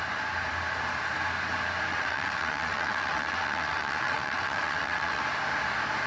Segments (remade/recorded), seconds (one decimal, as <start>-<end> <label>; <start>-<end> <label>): 0.0-1.9 recorded; 1.9-5.2 remade; 5.2-6.1 recorded